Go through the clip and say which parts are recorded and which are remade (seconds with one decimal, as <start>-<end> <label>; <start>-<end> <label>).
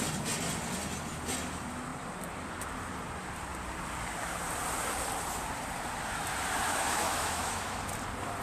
0.0-6.7 recorded; 6.7-7.8 remade; 7.8-8.4 recorded